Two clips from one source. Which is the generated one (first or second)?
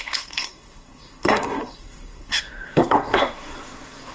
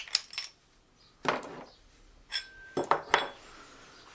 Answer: first